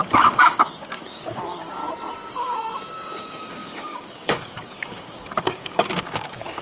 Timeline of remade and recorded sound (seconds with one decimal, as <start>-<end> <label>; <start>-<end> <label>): 0.0-1.8 remade; 1.8-2.3 recorded; 2.3-6.6 remade